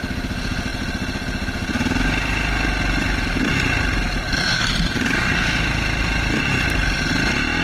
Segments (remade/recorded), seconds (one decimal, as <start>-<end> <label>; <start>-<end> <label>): 0.0-7.6 recorded